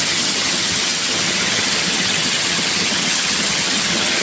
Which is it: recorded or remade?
remade